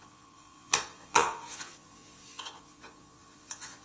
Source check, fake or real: fake